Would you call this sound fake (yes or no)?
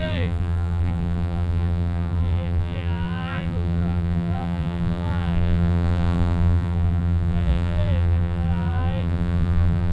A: yes